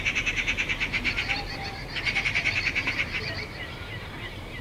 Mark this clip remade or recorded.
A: remade